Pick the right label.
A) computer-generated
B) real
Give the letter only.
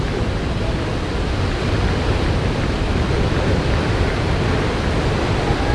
B